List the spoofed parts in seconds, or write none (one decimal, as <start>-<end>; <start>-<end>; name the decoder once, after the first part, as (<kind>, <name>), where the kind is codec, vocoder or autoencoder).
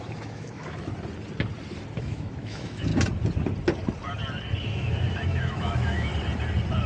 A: 0.0-0.9 (autoencoder, DAC-VAE); 2.0-2.9; 4.6-6.1